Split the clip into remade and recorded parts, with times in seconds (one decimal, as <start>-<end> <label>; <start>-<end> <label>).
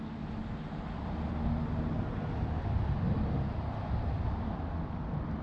0.0-5.4 recorded